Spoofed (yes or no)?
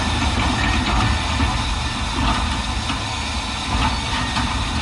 no